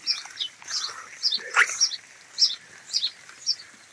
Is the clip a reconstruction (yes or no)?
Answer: no